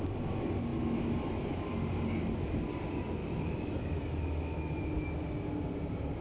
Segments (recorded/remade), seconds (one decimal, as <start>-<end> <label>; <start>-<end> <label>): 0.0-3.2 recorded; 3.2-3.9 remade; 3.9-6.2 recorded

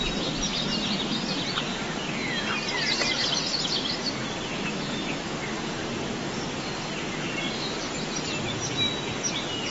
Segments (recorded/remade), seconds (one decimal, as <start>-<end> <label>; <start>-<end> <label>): 0.0-4.5 recorded; 4.5-5.4 remade; 5.4-9.7 recorded

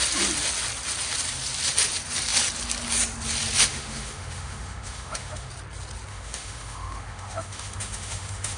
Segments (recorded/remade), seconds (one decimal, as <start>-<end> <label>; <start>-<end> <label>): 0.0-3.7 recorded; 3.7-5.5 remade; 5.5-6.1 recorded; 6.1-8.6 remade

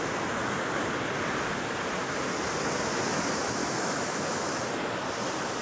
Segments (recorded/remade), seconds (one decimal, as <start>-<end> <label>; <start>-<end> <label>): 0.0-3.6 recorded; 3.6-4.6 remade; 4.6-5.6 recorded

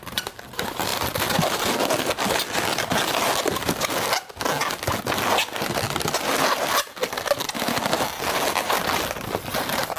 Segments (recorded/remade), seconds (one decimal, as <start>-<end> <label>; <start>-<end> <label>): 0.0-10.0 recorded

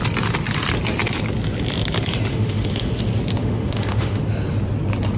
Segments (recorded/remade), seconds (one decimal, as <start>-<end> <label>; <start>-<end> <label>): 0.0-2.3 recorded; 2.3-3.0 remade; 3.0-3.4 recorded; 3.4-4.2 remade; 4.2-5.2 recorded

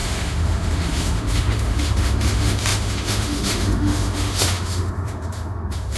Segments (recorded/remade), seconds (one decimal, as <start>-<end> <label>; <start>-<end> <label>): 0.0-6.0 remade

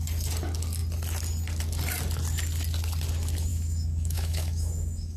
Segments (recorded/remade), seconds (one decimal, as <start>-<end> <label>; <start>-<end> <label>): 0.0-3.5 recorded; 3.5-5.2 remade